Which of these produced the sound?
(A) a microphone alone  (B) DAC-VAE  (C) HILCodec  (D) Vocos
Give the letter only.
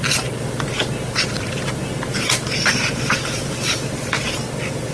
A